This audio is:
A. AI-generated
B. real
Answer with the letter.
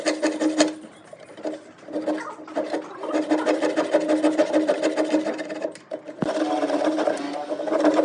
B